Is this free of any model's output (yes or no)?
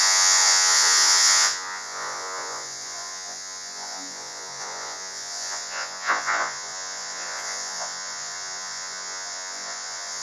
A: no